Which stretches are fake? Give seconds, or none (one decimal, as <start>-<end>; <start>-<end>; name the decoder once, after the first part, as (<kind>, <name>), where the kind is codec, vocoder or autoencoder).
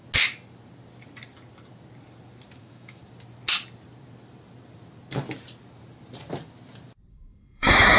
2.6-3.0 (autoencoder, DAC-VAE); 7.1-8.0